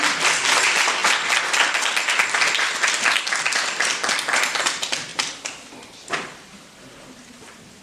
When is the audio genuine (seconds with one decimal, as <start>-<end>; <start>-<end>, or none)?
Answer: none